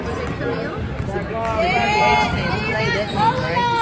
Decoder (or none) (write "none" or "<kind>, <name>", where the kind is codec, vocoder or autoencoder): none